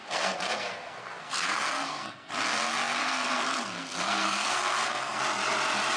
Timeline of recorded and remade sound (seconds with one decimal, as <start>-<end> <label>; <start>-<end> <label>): 0.0-2.3 remade; 2.3-3.0 recorded; 3.0-5.2 remade; 5.2-6.0 recorded